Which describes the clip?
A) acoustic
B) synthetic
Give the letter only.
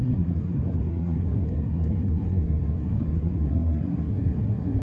B